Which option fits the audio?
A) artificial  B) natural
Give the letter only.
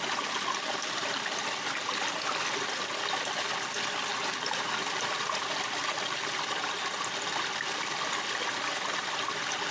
B